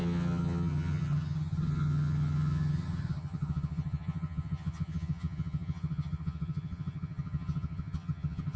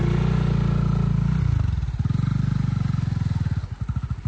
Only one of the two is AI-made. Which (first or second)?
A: first